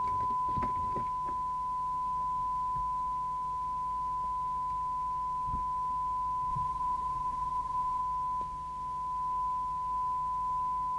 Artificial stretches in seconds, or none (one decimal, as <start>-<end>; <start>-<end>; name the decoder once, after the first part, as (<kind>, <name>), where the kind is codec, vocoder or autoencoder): 6.5-8.0 (vocoder, Vocos)